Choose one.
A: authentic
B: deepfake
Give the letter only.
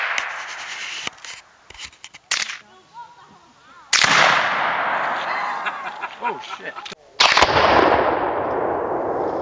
A